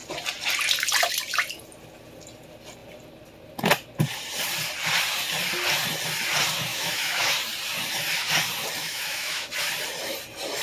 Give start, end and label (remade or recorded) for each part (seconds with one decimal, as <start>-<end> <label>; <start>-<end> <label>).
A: 0.0-6.7 recorded; 6.7-7.3 remade; 7.3-8.8 recorded; 8.8-9.5 remade; 9.5-10.6 recorded